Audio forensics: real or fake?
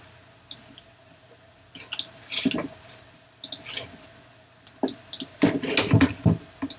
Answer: real